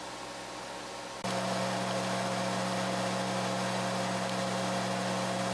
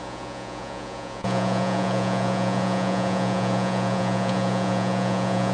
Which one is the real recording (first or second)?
first